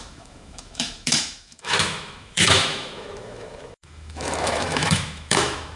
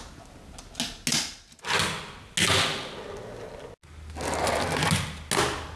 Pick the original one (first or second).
second